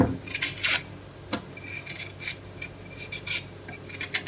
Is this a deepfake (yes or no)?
no